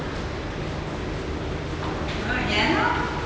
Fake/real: real